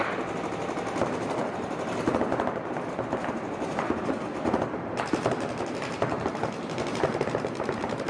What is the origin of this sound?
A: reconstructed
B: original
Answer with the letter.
B